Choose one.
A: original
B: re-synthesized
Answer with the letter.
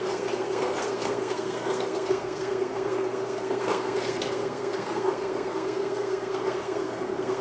B